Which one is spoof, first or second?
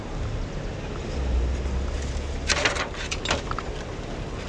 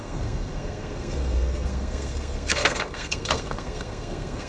second